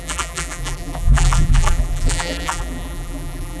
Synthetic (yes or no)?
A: yes